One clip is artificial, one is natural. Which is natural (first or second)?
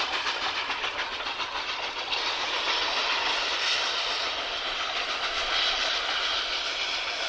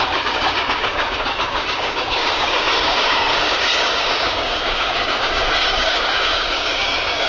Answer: first